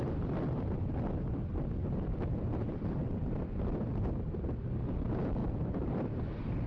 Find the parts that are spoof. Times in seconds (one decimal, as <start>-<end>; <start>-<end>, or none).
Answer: 2.6-3.1; 5.4-6.7